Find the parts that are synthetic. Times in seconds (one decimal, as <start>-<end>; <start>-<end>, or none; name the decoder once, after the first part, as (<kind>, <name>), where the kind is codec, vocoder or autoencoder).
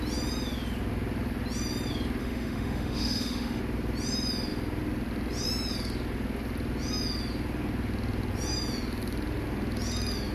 2.2-3.6 (autoencoder, DAC-VAE)